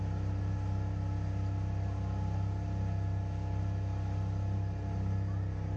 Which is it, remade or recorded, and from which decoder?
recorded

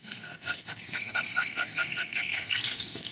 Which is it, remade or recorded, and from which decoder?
remade, codec, SNAC